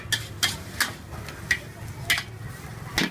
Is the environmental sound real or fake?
real